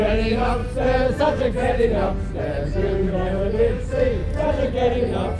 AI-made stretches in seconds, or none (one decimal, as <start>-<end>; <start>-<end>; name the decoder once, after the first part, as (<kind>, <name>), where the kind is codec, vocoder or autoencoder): 0.0-0.6 (autoencoder, DAC-VAE); 1.2-2.1; 2.9-4.2